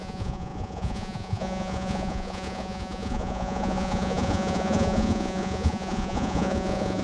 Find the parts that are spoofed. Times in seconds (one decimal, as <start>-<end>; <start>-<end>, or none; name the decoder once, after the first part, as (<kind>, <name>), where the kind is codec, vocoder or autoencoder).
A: 0.0-7.0 (vocoder, Vocos)